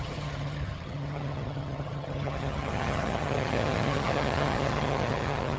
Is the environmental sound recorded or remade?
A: remade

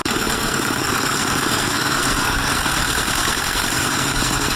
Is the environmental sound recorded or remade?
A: remade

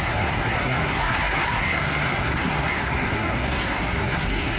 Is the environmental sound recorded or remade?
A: remade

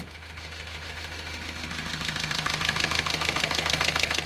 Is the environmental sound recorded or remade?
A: remade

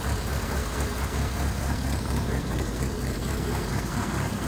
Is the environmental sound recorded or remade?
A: remade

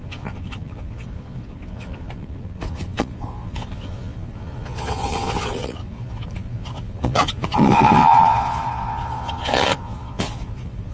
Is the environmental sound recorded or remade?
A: remade